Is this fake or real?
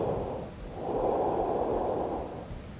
real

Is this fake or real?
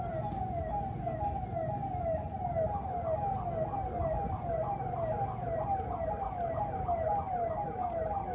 real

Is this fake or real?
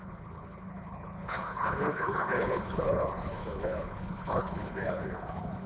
fake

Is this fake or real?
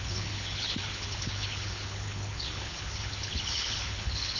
fake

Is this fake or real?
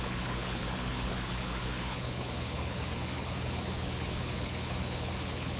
fake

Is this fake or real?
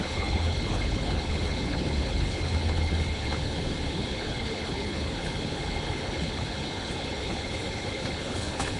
fake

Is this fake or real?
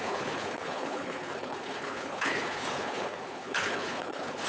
fake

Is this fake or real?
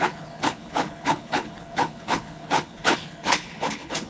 fake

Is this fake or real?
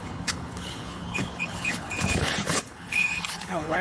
fake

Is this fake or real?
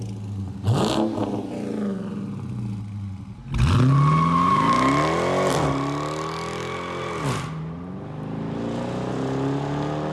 real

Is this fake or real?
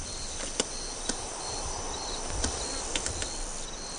real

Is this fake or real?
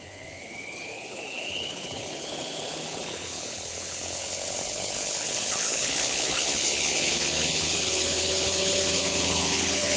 fake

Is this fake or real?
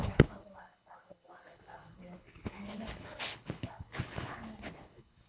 fake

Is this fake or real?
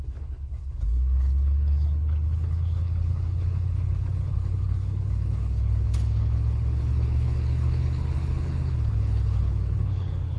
fake